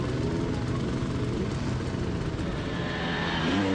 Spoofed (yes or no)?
no